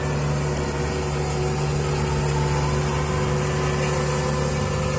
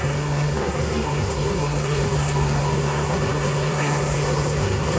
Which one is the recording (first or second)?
first